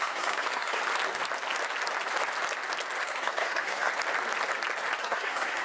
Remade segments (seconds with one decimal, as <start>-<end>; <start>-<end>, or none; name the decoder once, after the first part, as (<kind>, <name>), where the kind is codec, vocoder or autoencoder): 0.0-0.8 (codec, SNAC); 3.0-3.9; 5.0-5.6